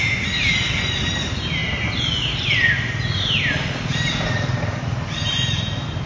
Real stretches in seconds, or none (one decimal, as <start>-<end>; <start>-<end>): 0.0-6.1